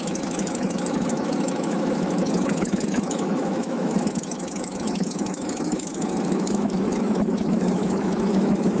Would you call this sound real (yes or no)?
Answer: no